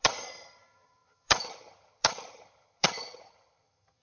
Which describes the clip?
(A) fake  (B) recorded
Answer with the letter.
A